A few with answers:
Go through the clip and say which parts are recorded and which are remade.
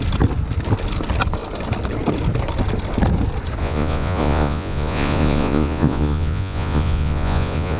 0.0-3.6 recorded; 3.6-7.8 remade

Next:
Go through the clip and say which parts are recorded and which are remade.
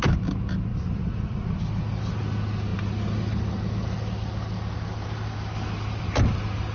0.0-0.7 recorded; 0.7-1.6 remade; 1.6-6.7 recorded